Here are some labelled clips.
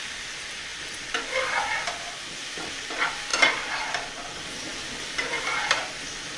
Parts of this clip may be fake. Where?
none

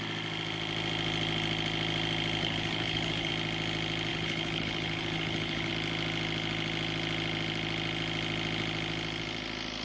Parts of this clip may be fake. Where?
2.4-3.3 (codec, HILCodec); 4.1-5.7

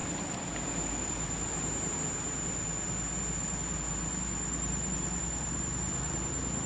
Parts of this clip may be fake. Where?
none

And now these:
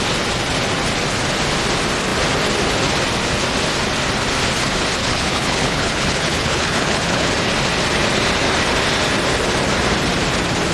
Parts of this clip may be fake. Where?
5.0-7.3 (codec, HILCodec)